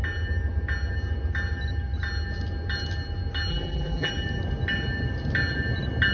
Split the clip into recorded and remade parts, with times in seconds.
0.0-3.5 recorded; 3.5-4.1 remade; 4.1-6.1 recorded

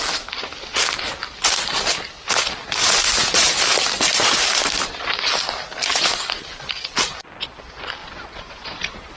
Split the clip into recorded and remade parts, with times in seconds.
0.0-8.0 recorded; 8.0-9.2 remade

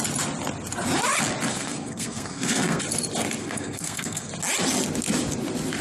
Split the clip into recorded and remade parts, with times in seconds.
0.0-1.5 recorded; 1.5-2.8 remade; 2.8-3.4 recorded; 3.4-4.3 remade; 4.3-5.8 recorded

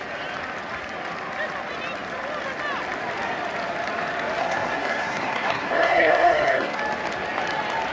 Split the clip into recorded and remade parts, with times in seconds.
0.0-4.4 recorded; 4.4-6.8 remade; 6.8-7.9 recorded

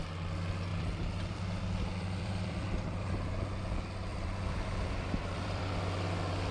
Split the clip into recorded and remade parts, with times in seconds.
0.0-0.7 recorded; 0.7-3.1 remade; 3.1-4.1 recorded; 4.1-5.6 remade; 5.6-6.5 recorded

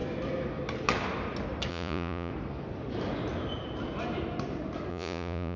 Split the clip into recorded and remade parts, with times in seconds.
0.0-1.7 recorded; 1.7-2.3 remade; 2.3-4.9 recorded; 4.9-5.6 remade

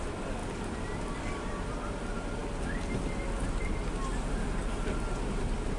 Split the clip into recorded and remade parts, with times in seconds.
0.0-5.8 recorded